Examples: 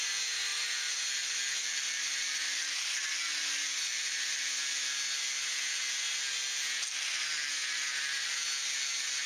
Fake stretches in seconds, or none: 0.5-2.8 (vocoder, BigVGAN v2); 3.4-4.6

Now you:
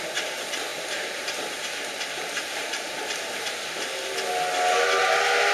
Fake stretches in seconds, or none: 0.7-3.8 (vocoder, BigVGAN v2)

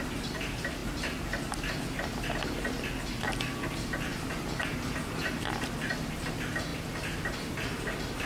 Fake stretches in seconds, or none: 6.7-7.5 (vocoder, BigVGAN v2)

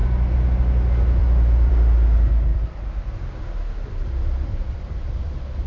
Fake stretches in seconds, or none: 1.2-1.7 (vocoder, BigVGAN v2); 2.5-5.3

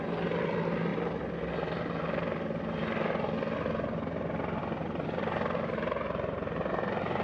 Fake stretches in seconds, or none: none

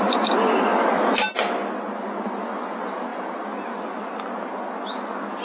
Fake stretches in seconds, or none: 0.7-1.4 (vocoder, BigVGAN v2); 3.1-3.8